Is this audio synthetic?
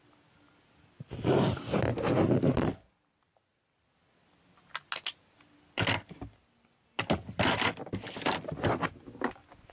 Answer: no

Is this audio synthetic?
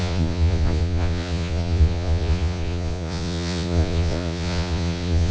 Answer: yes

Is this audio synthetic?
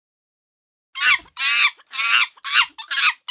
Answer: no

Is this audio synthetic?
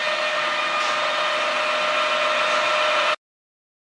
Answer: no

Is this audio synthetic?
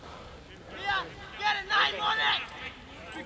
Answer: no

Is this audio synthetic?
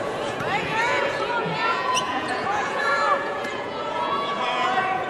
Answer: yes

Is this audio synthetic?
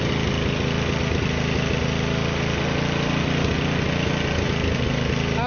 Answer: no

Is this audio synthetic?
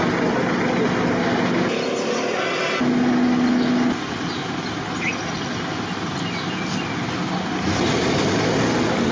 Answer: no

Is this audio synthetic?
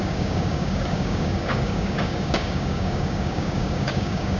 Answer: yes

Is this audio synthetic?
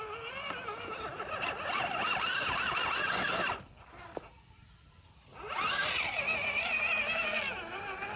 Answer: no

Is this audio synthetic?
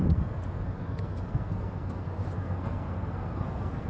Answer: yes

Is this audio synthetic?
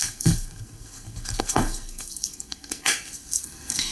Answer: yes